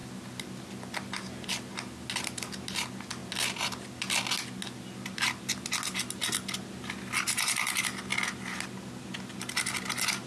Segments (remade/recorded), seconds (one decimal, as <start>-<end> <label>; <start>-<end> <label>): 0.0-10.3 recorded